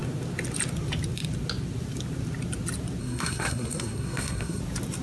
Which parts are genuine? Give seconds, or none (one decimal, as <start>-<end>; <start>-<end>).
0.0-3.0; 4.6-5.0